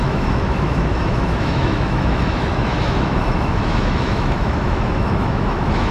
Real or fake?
fake